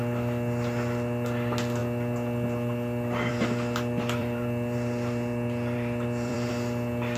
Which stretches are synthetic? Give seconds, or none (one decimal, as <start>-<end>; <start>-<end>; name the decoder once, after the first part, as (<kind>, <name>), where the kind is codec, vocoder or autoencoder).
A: 4.2-6.5 (vocoder, BigVGAN v2)